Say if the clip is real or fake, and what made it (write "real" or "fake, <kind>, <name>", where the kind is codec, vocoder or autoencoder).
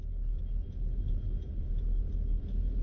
real